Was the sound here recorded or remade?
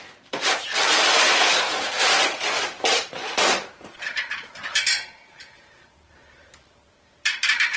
remade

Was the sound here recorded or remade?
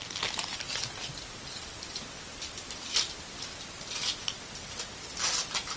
recorded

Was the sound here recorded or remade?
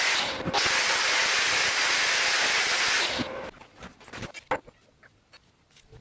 recorded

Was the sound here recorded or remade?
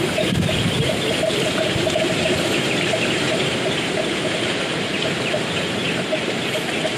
remade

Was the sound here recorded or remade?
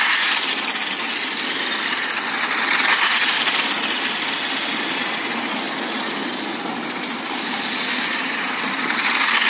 remade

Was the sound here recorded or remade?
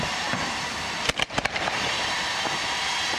remade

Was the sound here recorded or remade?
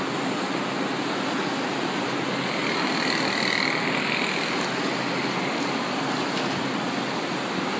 recorded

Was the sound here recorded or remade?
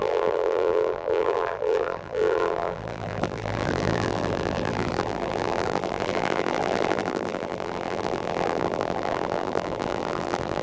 remade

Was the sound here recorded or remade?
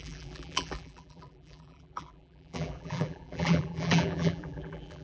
remade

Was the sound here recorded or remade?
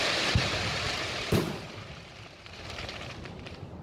remade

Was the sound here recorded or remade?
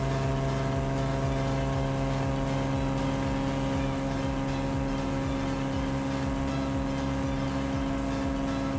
recorded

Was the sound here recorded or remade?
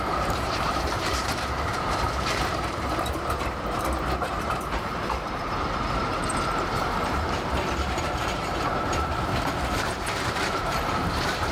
remade